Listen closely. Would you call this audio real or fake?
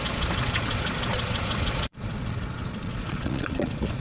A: fake